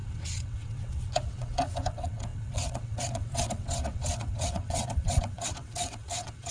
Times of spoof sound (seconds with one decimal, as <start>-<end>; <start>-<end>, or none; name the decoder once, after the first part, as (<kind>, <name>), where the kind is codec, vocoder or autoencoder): 0.0-6.5 (vocoder, WaveNeXt)

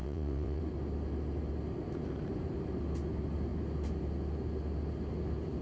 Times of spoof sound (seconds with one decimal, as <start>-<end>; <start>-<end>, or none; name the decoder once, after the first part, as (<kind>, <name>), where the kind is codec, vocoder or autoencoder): 0.0-0.6 (vocoder, WaveNeXt)

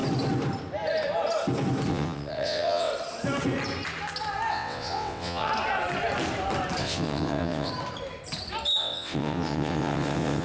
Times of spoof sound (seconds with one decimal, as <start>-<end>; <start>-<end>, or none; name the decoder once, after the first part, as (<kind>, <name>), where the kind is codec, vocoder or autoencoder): 1.9-2.9 (vocoder, WaveNeXt); 4.5-5.5; 6.8-7.7; 8.8-10.4